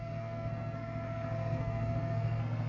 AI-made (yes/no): yes